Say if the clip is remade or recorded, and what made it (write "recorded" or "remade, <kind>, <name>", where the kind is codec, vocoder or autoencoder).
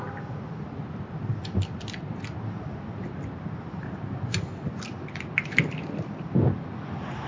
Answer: recorded